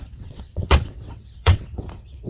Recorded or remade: remade